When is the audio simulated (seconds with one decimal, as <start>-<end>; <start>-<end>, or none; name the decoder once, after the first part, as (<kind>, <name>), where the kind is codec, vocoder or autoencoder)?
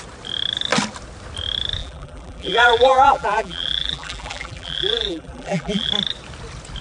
1.8-5.9 (vocoder, BigVGAN v2)